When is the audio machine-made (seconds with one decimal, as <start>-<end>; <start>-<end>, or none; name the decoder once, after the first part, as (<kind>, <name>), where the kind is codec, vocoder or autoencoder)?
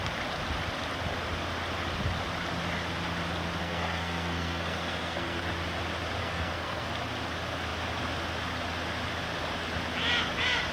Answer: 3.6-5.4 (codec, SNAC); 6.2-6.9